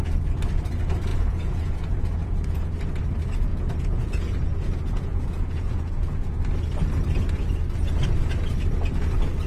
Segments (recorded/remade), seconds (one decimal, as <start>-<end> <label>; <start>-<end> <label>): 0.0-1.1 recorded; 1.1-3.0 remade; 3.0-3.5 recorded; 3.5-6.4 remade; 6.4-9.5 recorded